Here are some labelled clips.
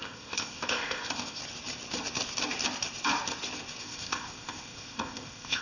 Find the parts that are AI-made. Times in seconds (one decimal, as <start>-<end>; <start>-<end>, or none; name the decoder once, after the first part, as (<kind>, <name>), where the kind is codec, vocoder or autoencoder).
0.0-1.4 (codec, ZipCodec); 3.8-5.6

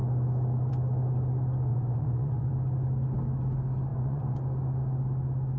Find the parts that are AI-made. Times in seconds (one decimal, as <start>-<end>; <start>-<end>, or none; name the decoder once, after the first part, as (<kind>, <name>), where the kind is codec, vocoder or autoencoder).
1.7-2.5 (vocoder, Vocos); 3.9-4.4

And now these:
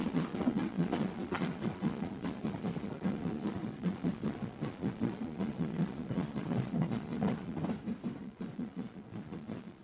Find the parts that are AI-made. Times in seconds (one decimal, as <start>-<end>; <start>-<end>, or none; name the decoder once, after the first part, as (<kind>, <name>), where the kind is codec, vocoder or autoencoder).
0.0-7.6 (vocoder, Vocos); 8.2-9.8

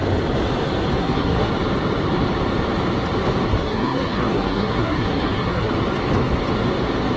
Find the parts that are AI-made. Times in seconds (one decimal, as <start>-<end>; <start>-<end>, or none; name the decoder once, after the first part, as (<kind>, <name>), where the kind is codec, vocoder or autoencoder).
1.0-1.5 (codec, SNAC); 3.5-5.7

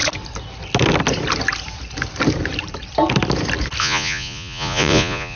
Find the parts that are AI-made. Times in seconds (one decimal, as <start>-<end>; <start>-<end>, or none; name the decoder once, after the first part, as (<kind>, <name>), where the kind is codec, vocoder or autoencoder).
3.8-5.4 (vocoder, Vocos)

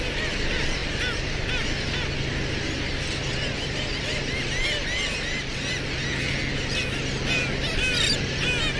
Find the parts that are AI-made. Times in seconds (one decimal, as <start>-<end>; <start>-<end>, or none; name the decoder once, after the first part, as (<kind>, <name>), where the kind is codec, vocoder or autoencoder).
none